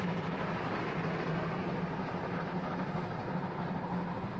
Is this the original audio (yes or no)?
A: yes